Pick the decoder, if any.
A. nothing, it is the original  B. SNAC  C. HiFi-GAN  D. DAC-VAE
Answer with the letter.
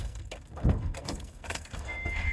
B